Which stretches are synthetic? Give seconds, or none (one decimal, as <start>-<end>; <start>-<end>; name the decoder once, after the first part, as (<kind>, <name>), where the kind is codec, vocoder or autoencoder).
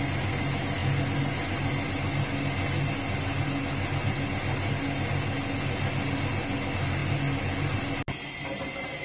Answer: none